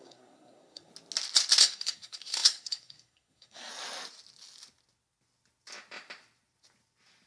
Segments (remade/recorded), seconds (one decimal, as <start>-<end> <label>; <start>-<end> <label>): 0.0-0.9 remade; 0.9-1.6 recorded; 1.6-3.7 remade; 3.7-7.3 recorded